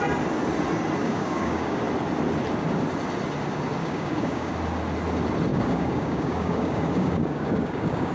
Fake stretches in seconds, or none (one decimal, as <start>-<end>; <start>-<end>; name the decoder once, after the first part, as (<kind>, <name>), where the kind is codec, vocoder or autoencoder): 1.0-1.8 (codec, DAC); 3.8-4.5; 5.5-8.1